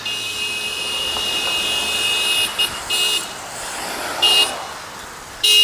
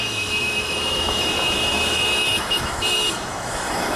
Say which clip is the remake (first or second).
second